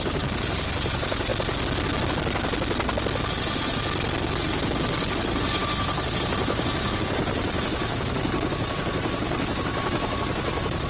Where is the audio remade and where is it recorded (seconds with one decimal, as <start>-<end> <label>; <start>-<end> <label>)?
0.0-1.3 remade; 1.3-5.3 recorded; 5.3-10.9 remade